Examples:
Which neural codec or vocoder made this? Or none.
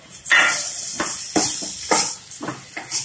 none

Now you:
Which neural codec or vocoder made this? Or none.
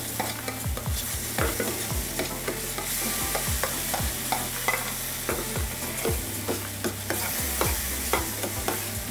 none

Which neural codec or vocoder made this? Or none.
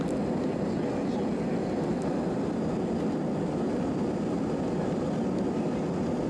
none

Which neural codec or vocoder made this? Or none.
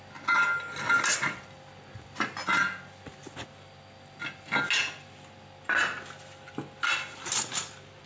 none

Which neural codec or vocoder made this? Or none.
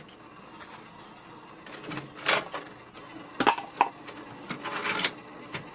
none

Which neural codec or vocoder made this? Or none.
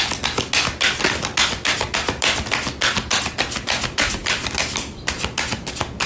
none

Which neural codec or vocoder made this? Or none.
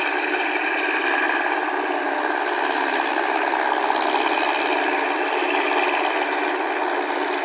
none